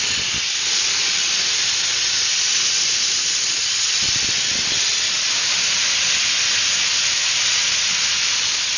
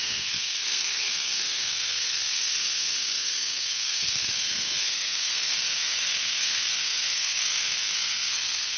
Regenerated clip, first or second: second